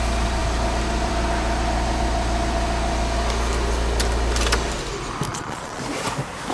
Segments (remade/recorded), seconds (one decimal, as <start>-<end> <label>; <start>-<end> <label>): 0.0-5.3 recorded; 5.3-5.8 remade; 5.8-6.5 recorded